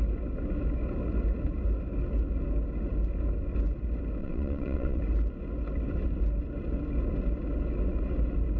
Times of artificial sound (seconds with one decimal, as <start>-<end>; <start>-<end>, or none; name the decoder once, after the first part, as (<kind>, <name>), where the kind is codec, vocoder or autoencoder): 4.2-5.0 (vocoder, WaveNeXt)